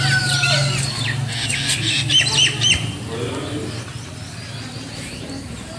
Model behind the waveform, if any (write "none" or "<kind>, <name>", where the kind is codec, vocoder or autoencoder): none